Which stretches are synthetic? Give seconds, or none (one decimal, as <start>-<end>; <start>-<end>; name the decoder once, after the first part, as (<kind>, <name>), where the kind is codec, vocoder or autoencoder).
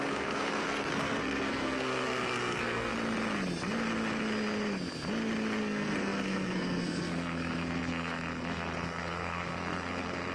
0.0-2.9 (codec, SNAC); 5.6-10.3